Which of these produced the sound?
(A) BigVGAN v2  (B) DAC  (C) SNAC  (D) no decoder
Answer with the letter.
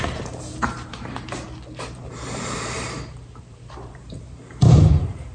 A